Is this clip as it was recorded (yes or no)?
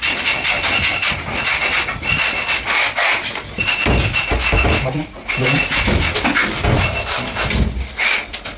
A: yes